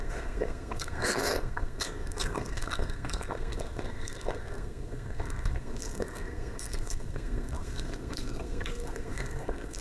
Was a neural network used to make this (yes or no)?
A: yes